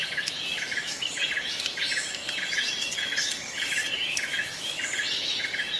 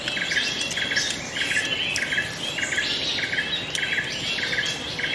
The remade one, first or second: first